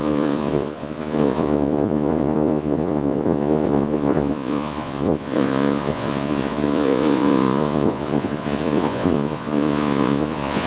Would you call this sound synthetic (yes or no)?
yes